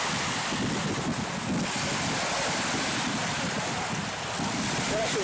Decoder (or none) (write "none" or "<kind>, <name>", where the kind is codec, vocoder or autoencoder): none